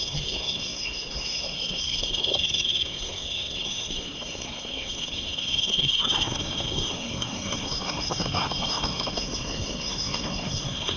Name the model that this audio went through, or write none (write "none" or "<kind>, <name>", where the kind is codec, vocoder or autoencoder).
codec, SNAC